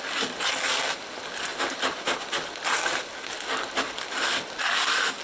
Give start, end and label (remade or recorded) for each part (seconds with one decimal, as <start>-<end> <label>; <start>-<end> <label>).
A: 0.0-5.2 recorded